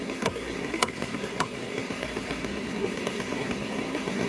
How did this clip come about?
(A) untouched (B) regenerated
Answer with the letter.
B